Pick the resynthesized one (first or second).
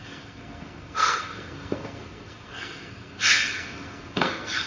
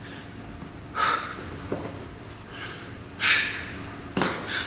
first